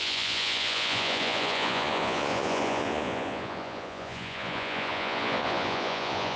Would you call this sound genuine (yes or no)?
no